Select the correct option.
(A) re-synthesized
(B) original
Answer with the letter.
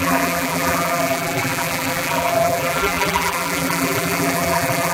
A